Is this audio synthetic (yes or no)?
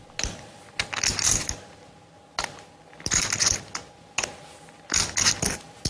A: no